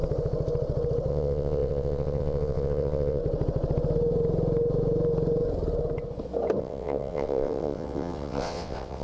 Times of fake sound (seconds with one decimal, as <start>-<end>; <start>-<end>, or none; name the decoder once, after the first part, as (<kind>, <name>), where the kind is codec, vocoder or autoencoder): 1.1-3.2 (vocoder, WaveNeXt); 6.6-9.0